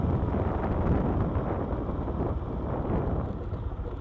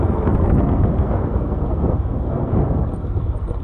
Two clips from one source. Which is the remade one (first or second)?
second